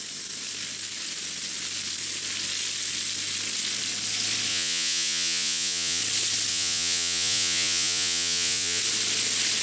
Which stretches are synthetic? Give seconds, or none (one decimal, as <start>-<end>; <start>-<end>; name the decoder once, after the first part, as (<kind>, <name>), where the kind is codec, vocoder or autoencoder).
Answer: 4.5-6.0 (vocoder, Vocos); 6.5-8.8